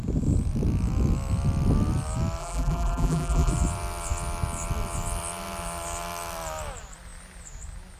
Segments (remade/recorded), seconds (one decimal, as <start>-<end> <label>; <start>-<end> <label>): 0.0-2.4 recorded; 2.4-3.5 remade; 3.5-8.0 recorded